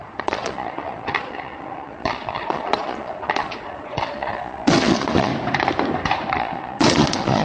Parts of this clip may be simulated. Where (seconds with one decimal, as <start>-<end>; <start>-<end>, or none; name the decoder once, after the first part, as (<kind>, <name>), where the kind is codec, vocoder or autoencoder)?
0.0-5.3 (vocoder, Vocos); 6.3-7.4